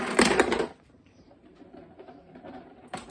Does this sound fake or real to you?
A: fake